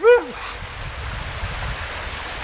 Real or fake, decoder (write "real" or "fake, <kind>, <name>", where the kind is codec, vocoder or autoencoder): real